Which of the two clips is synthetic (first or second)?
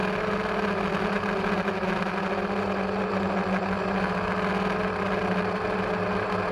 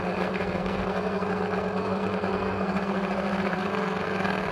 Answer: second